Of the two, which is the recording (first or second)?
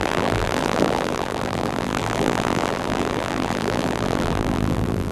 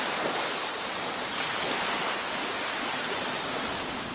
second